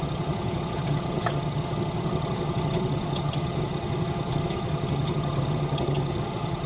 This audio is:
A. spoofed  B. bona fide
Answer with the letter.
A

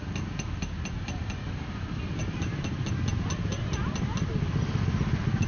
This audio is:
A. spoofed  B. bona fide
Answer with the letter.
B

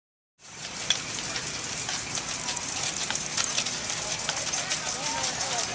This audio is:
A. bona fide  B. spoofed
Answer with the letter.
A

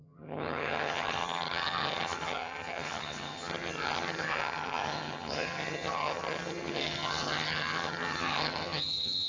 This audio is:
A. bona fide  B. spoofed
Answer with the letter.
B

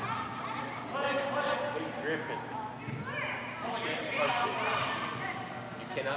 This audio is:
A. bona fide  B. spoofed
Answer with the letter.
A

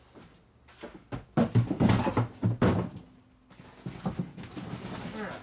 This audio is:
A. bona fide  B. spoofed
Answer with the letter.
A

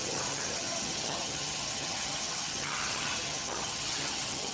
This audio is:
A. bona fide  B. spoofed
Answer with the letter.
B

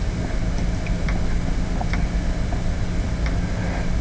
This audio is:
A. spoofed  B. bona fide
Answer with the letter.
B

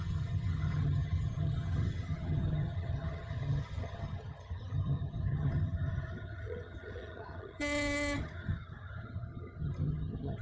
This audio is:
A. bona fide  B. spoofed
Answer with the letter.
B